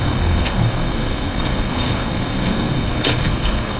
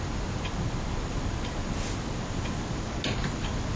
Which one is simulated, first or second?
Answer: first